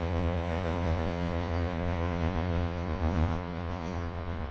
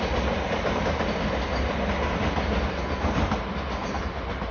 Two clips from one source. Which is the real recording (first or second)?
second